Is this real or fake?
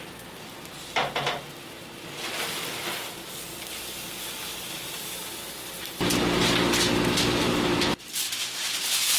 real